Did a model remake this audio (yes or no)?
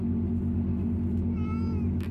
no